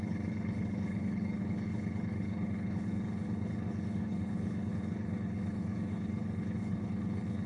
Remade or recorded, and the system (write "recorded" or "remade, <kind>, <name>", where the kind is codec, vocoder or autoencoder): remade, codec, HILCodec